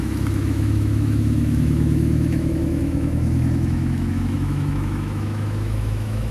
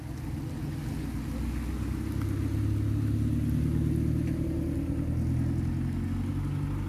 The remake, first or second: first